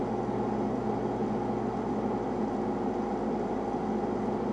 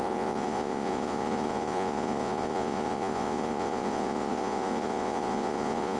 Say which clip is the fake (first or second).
second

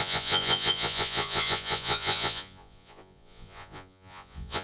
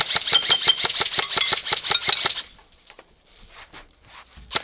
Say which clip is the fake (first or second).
first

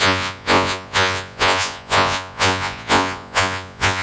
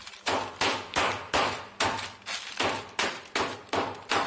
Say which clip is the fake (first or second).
first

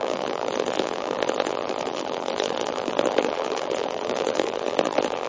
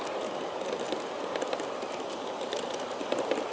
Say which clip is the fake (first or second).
first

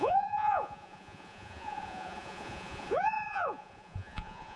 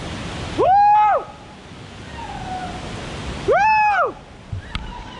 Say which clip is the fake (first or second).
first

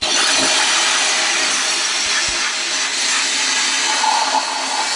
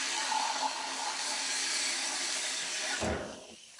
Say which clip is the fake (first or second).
second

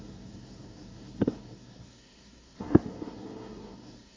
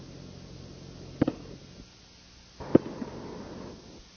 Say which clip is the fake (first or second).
first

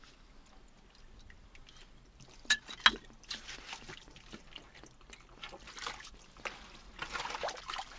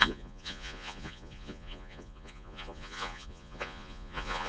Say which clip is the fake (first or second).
second